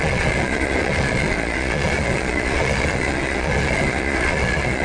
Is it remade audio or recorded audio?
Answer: remade